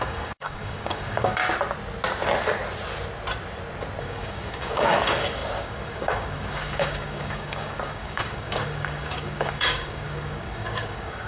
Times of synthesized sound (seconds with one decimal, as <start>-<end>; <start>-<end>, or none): 0.0-1.4; 4.0-11.3